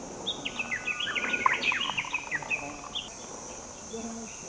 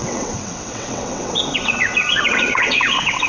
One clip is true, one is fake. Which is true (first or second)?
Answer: first